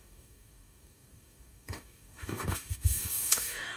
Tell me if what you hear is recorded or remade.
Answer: remade